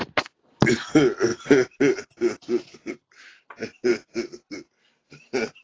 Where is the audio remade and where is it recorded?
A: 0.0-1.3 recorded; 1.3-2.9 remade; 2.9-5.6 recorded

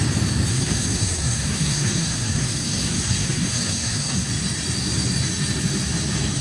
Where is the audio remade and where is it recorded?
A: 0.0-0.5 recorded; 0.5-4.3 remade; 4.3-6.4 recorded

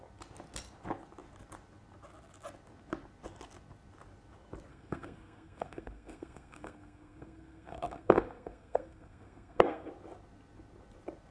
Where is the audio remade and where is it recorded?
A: 0.0-4.7 recorded; 4.7-9.9 remade; 9.9-11.3 recorded

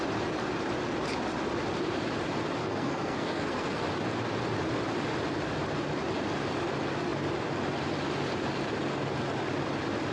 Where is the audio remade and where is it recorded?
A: 0.0-2.6 recorded; 2.6-3.8 remade; 3.8-10.1 recorded

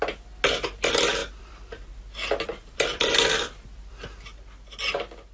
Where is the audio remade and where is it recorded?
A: 0.0-1.2 recorded; 1.2-4.1 remade; 4.1-5.3 recorded